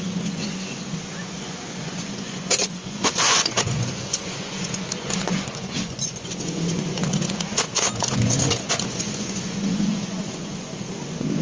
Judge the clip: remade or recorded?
remade